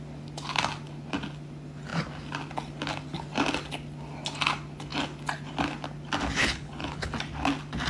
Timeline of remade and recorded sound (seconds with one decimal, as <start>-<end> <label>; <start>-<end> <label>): 0.0-6.4 recorded; 6.4-7.1 remade; 7.1-7.9 recorded